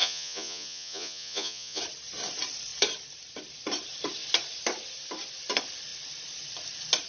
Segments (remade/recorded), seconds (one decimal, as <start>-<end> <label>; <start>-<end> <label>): 0.0-1.8 remade; 1.8-7.1 recorded